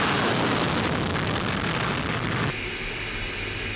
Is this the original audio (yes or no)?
yes